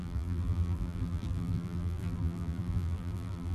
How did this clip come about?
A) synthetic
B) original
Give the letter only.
A